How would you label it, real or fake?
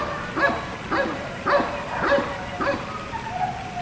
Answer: real